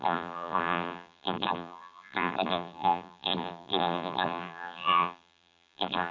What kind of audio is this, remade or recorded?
remade